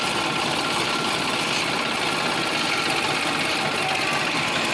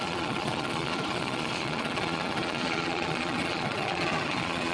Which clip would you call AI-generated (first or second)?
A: second